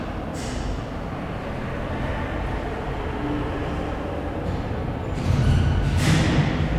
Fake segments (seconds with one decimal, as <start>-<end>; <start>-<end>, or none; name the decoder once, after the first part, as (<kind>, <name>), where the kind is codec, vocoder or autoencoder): none